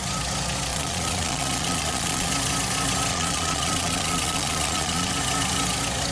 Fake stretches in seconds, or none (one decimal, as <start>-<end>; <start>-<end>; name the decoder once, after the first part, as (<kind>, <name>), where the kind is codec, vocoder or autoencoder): 0.7-2.3 (vocoder, Vocos); 3.1-5.1